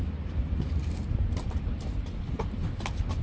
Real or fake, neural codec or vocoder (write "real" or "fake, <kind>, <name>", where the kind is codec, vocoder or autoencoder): real